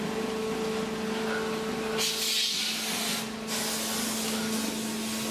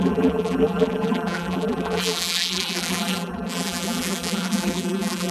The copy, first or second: second